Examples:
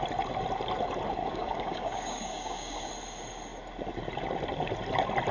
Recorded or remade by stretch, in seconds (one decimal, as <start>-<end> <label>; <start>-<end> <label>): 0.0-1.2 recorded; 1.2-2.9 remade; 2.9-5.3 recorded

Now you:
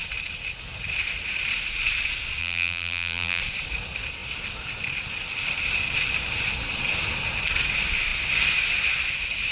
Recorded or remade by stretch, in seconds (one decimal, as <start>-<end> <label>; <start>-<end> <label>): 0.0-2.4 recorded; 2.4-3.4 remade; 3.4-9.5 recorded

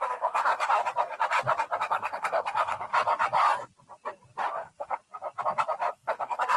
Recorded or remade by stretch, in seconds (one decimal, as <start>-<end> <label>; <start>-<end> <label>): 0.0-0.8 remade; 0.8-1.8 recorded; 1.8-2.9 remade; 2.9-4.5 recorded; 4.5-5.0 remade; 5.0-5.9 recorded; 5.9-6.6 remade

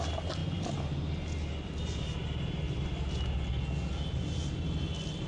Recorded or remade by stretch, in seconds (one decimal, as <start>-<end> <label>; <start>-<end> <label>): 0.0-5.3 recorded

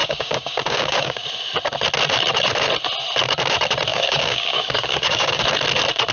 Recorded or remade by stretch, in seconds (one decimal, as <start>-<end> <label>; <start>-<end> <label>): 0.0-1.3 remade; 1.3-3.9 recorded; 3.9-5.4 remade; 5.4-6.1 recorded

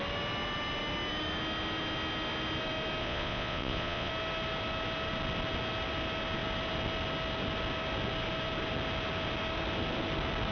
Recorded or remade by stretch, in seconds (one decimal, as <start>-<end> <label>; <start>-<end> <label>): 0.0-3.0 recorded; 3.0-4.1 remade; 4.1-10.5 recorded